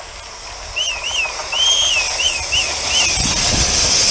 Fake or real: real